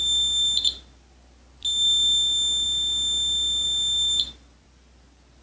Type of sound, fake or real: real